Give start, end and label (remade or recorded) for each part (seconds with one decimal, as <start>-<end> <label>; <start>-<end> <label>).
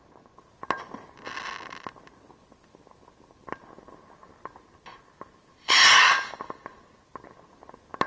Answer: 0.0-8.1 recorded